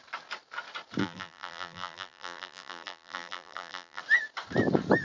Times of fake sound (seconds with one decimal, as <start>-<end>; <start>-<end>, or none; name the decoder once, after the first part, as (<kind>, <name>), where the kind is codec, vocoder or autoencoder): 1.0-4.0 (vocoder, BigVGAN v2)